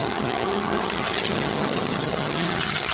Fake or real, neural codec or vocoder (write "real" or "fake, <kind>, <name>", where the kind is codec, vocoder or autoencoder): fake, vocoder, HiFi-GAN